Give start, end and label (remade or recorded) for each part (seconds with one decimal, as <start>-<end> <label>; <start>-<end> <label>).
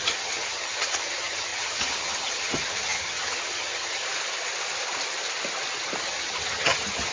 0.0-4.0 remade; 4.0-6.0 recorded; 6.0-7.1 remade